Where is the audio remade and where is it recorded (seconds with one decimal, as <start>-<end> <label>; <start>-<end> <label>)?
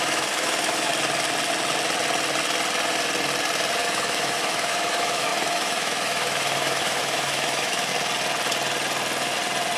0.0-0.9 remade; 0.9-3.8 recorded; 3.8-7.9 remade; 7.9-9.8 recorded